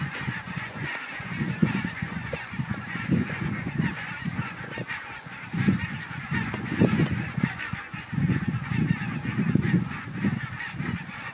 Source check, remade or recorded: remade